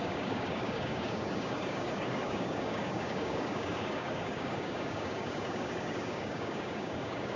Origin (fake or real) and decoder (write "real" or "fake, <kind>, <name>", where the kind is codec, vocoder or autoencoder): fake, codec, DAC